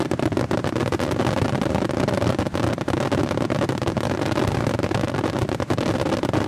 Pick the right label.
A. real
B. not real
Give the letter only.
A